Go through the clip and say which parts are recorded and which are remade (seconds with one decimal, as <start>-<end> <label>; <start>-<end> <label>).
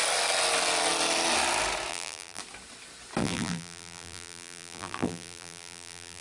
0.0-1.9 recorded; 1.9-2.4 remade; 2.4-3.2 recorded; 3.2-6.2 remade